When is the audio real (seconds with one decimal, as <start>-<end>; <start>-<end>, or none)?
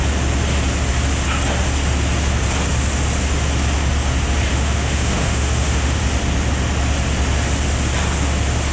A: 0.0-4.5; 6.0-8.7